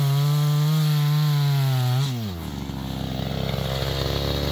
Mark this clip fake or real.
real